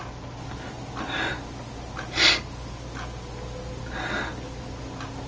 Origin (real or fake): real